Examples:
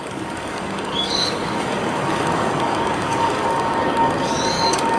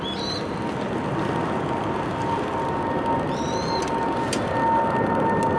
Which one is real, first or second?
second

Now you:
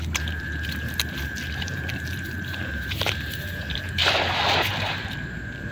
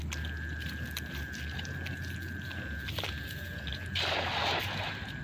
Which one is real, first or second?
second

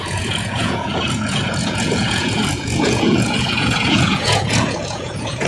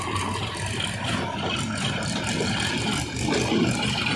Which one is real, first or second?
second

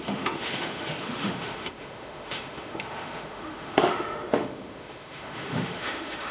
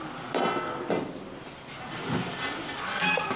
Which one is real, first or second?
second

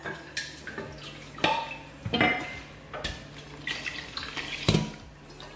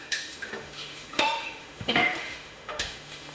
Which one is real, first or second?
first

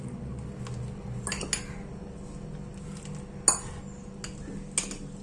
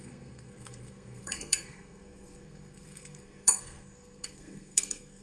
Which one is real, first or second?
first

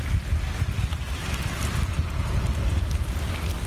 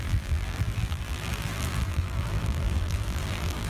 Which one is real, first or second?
first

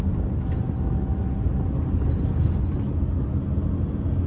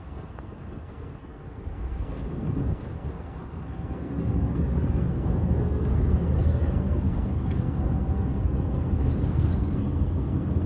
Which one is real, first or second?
first